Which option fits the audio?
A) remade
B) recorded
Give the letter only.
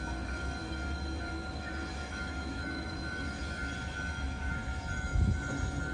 A